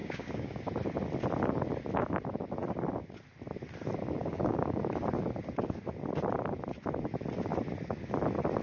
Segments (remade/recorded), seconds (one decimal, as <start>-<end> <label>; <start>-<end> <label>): 0.0-0.6 remade; 0.6-4.2 recorded; 4.2-4.8 remade; 4.8-8.6 recorded